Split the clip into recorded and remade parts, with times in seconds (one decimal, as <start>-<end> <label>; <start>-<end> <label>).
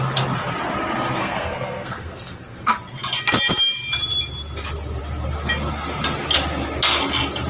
0.0-1.2 recorded; 1.2-2.7 remade; 2.7-7.5 recorded